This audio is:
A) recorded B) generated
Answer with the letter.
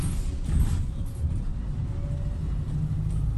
A